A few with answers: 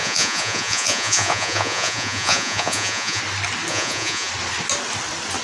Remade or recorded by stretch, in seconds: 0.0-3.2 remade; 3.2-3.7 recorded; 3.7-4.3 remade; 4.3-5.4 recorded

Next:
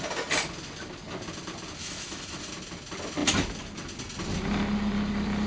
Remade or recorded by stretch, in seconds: 0.0-1.8 recorded; 1.8-2.5 remade; 2.5-5.5 recorded

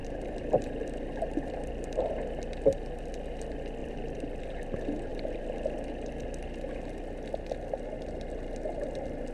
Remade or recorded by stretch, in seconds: 0.0-3.0 remade; 3.0-3.8 recorded; 3.8-4.4 remade; 4.4-9.3 recorded

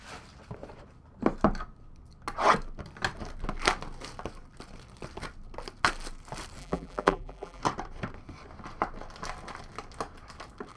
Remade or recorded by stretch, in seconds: 0.0-6.6 recorded; 6.6-7.6 remade; 7.6-10.8 recorded

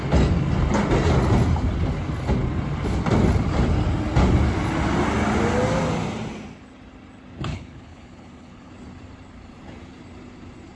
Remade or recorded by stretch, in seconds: 0.0-7.5 recorded; 7.5-8.7 remade; 8.7-10.8 recorded

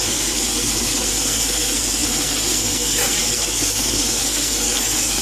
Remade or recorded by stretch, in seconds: 0.0-5.2 remade

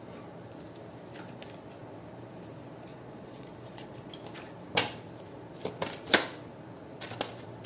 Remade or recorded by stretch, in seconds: 0.0-2.9 recorded; 2.9-4.1 remade; 4.1-7.7 recorded

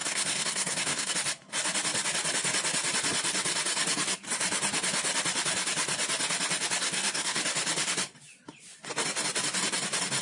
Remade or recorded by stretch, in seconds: 0.0-1.1 remade; 1.1-6.8 recorded; 6.8-7.4 remade; 7.4-10.2 recorded